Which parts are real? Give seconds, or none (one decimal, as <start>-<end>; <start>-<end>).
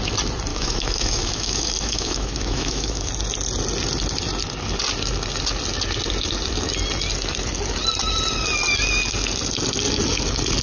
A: 0.0-0.5; 3.1-10.6